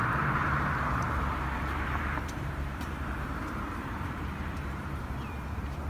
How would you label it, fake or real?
fake